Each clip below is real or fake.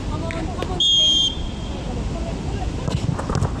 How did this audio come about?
real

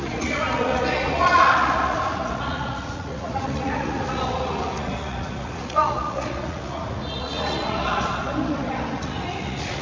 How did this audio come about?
fake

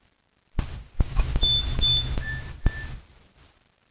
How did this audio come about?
real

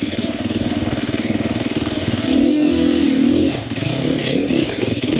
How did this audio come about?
fake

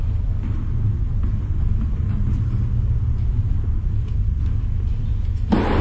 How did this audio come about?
real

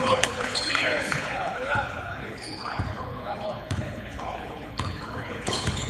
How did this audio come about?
fake